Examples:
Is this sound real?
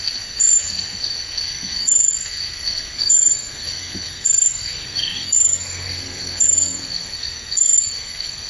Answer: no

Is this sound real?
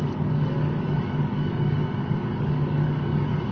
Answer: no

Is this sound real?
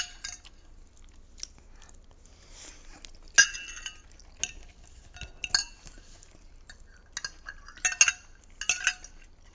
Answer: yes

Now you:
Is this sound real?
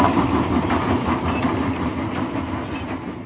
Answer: yes